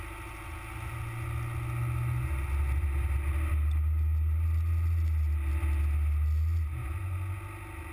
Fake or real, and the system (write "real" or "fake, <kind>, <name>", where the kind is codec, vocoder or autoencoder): real